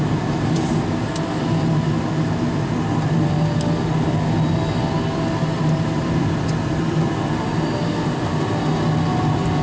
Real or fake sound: real